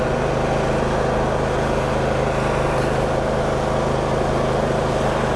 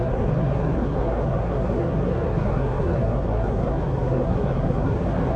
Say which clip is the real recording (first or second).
first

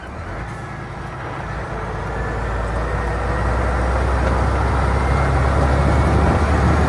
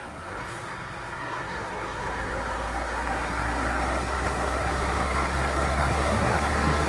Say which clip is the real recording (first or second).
first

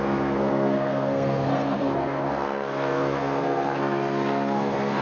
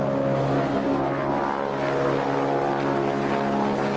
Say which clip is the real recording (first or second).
second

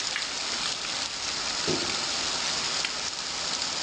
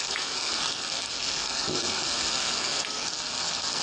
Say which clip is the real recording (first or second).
first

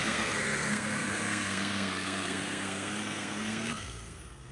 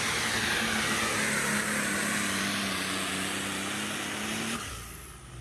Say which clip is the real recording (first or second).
second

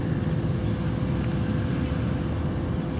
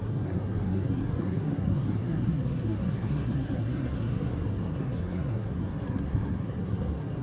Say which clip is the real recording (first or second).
first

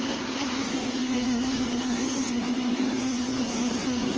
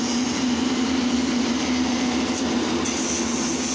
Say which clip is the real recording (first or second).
second